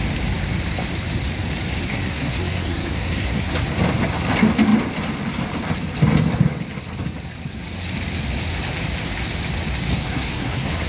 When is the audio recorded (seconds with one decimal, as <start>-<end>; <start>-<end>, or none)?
0.0-1.9; 3.5-9.9